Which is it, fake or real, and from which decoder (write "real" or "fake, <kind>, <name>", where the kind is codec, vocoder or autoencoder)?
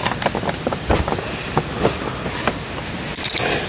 real